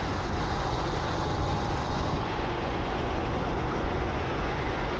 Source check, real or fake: fake